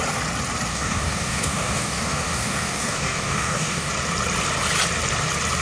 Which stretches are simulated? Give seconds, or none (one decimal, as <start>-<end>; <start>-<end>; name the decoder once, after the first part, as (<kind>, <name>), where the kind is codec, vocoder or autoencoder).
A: 0.7-3.9 (codec, DAC)